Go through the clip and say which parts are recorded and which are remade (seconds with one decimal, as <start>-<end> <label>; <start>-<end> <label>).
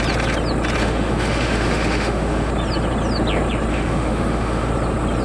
0.0-0.8 recorded; 0.8-2.5 remade; 2.5-3.7 recorded; 3.7-4.7 remade; 4.7-5.2 recorded